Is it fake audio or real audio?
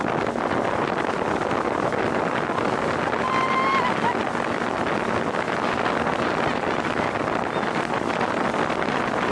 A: real